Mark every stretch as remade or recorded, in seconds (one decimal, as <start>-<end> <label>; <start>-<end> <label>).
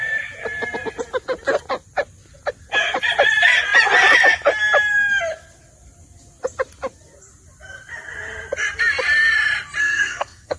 0.0-9.8 recorded; 9.8-10.6 remade